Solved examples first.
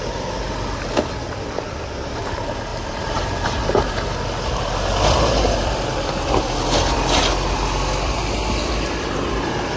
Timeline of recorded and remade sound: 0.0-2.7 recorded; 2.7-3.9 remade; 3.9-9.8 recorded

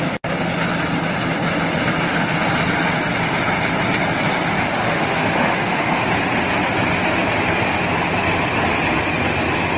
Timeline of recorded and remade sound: 0.0-4.8 recorded; 4.8-6.0 remade; 6.0-9.8 recorded

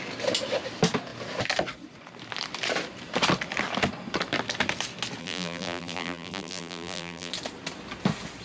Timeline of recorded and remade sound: 0.0-5.2 recorded; 5.2-7.3 remade; 7.3-8.4 recorded

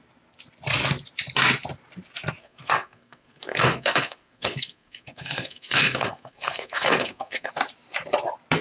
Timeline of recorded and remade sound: 0.0-2.4 recorded; 2.4-7.5 remade; 7.5-8.6 recorded

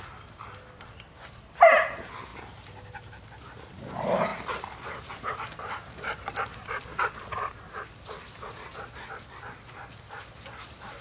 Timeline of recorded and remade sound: 0.0-11.0 recorded